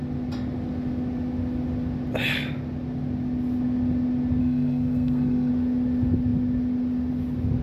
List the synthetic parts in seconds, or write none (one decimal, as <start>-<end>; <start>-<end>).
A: 4.4-5.5